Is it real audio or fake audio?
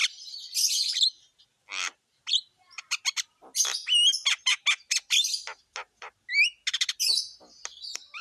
real